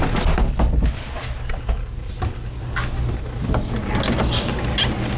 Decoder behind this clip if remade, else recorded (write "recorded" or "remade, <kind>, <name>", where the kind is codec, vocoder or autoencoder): recorded